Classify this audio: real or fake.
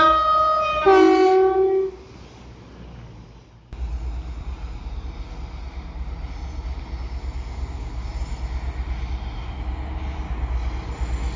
real